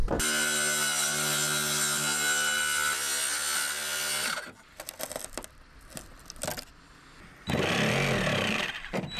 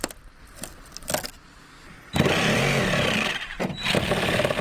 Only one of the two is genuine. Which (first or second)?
first